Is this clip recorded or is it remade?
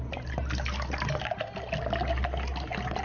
recorded